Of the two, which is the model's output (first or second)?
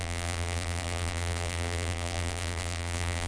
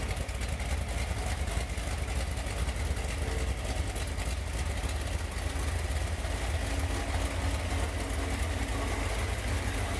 first